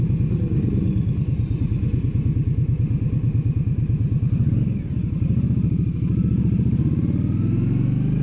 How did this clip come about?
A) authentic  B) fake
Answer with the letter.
A